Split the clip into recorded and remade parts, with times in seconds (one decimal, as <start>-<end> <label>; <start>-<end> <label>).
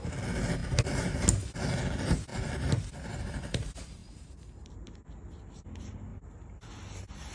0.0-4.0 recorded; 4.0-4.7 remade; 4.7-7.3 recorded